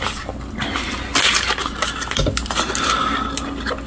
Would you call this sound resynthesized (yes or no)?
no